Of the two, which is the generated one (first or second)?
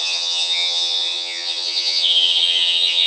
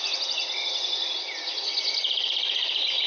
first